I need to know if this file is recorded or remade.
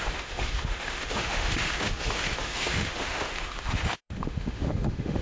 remade